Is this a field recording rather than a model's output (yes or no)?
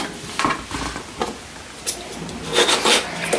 yes